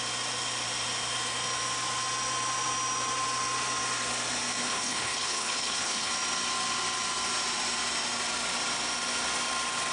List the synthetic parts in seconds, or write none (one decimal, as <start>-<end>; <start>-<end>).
4.6-6.1

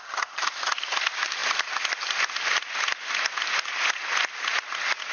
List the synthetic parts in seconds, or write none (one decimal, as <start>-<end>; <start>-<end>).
none

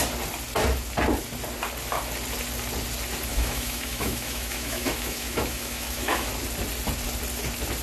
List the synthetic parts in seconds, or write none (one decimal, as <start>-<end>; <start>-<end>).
3.3-6.3